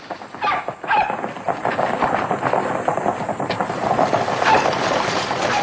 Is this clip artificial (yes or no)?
no